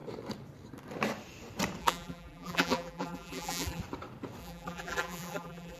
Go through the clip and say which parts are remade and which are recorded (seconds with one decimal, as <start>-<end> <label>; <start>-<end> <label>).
0.0-1.8 recorded; 1.8-3.8 remade; 3.8-4.4 recorded; 4.4-5.8 remade